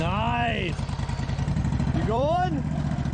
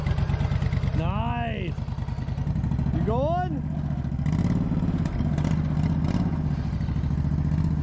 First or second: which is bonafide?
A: second